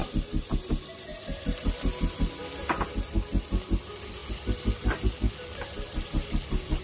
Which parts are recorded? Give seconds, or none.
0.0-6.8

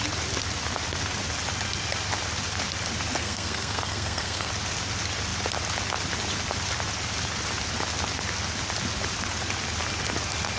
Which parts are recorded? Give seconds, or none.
0.0-3.2; 4.5-10.6